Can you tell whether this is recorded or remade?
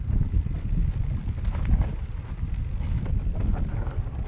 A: recorded